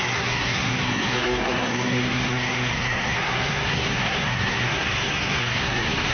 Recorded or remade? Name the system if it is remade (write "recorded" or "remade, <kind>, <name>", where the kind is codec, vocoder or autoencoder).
remade, codec, SNAC